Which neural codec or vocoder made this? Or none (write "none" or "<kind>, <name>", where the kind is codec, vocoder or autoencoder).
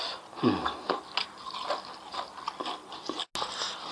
none